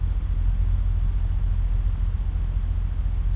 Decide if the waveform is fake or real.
real